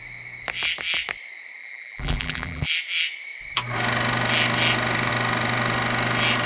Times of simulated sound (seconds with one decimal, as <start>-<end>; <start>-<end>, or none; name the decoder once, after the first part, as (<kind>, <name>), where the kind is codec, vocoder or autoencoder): 1.6-2.7 (vocoder, BigVGAN v2)